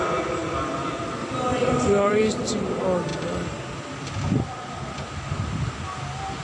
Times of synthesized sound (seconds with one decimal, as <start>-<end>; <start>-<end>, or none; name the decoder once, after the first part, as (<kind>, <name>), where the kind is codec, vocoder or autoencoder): 0.4-1.0 (vocoder, BigVGAN v2); 1.5-2.2